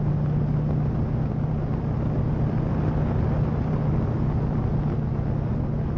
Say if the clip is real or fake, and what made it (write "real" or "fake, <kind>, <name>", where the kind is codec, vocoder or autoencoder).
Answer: real